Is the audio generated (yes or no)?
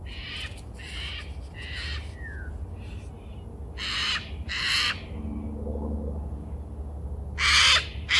no